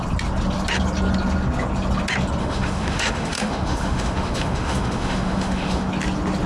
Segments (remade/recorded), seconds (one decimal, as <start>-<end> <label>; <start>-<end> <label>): 0.0-2.4 recorded; 2.4-5.9 remade; 5.9-6.5 recorded